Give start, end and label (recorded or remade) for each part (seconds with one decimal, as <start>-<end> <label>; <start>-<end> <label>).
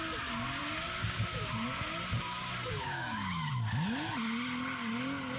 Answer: 0.0-0.6 recorded; 0.6-1.5 remade; 1.5-2.7 recorded; 2.7-3.5 remade; 3.5-5.4 recorded